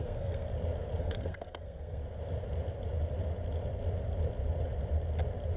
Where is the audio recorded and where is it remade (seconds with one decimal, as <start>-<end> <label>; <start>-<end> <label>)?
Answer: 0.0-0.5 remade; 0.5-1.0 recorded; 1.0-2.0 remade; 2.0-5.6 recorded